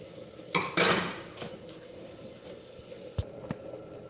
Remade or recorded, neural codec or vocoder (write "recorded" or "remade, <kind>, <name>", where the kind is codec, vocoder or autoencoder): recorded